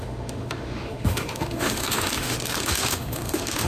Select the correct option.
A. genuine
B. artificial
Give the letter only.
B